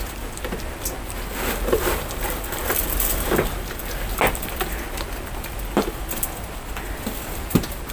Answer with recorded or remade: recorded